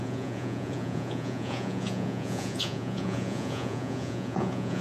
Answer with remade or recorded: remade